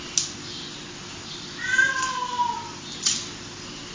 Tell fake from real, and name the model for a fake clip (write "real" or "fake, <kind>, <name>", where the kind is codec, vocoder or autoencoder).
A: real